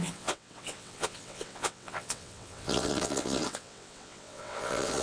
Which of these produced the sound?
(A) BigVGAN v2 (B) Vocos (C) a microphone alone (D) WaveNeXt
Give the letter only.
D